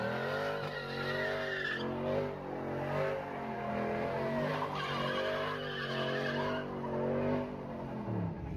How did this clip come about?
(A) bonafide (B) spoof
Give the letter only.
A